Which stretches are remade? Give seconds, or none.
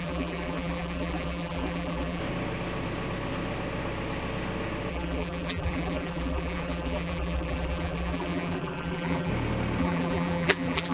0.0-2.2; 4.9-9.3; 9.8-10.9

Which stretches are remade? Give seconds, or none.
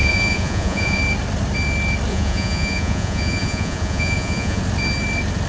0.0-1.0; 2.1-4.6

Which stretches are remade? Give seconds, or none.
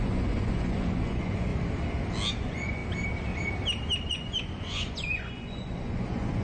0.0-1.5; 2.4-2.8; 4.1-6.4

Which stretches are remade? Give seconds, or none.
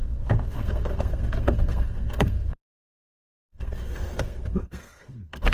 0.0-5.5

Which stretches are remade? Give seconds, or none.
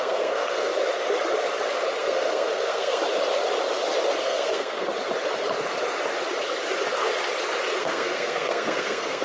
0.0-0.7; 2.0-3.0; 4.2-4.9; 7.8-9.2